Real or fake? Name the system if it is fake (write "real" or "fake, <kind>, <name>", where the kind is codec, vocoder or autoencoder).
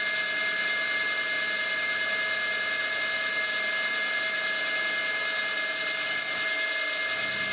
real